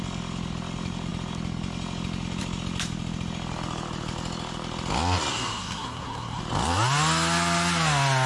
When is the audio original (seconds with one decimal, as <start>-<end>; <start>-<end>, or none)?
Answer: 0.0-5.3; 6.4-8.3